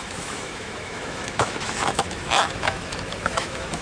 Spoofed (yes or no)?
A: yes